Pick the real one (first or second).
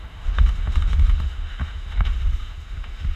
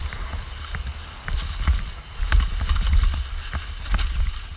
second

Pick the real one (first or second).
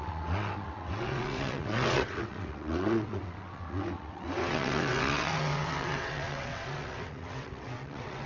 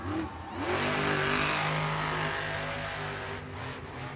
second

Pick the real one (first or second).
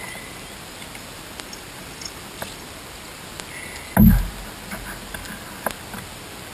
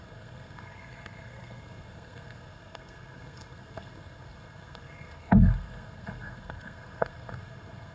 first